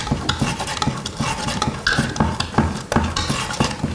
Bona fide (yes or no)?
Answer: yes